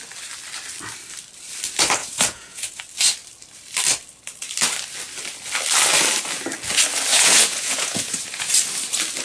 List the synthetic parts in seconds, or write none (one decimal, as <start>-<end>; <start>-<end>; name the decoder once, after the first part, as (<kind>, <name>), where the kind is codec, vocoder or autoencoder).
2.0-2.8 (vocoder, Vocos); 7.1-8.5